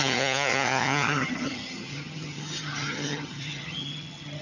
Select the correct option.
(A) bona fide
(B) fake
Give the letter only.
B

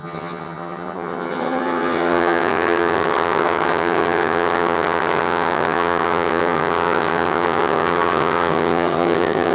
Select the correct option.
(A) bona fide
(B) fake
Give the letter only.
B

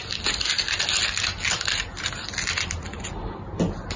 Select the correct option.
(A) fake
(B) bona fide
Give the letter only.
B